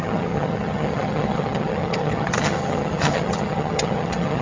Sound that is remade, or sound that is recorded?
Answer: remade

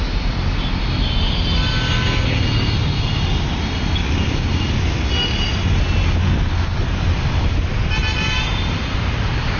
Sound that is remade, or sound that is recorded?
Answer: recorded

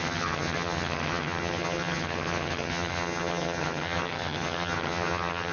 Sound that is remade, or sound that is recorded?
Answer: remade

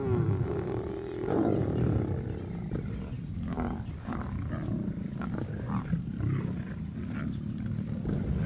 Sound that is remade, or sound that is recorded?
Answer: recorded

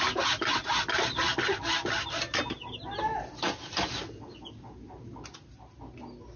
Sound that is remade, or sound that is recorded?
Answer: recorded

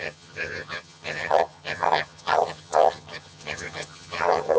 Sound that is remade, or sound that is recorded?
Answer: remade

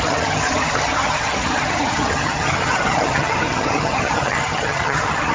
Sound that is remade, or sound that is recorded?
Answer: remade